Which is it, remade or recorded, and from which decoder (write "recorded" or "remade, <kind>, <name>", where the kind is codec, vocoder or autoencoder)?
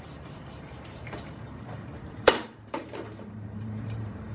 remade, vocoder, BigVGAN v2